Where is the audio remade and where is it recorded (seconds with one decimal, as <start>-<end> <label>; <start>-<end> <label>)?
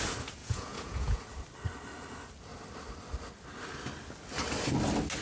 0.0-0.4 recorded; 0.4-1.2 remade; 1.2-5.2 recorded